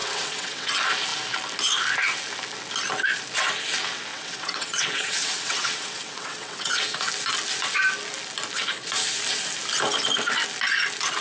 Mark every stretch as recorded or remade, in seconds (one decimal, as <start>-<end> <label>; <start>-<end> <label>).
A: 0.0-0.7 remade; 0.7-4.1 recorded; 4.1-7.0 remade; 7.0-11.2 recorded